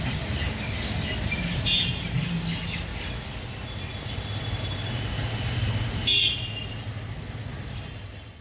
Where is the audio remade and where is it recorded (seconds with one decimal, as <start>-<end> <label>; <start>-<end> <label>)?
0.0-8.4 recorded